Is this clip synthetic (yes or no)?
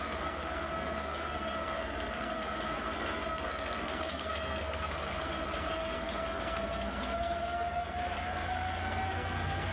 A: yes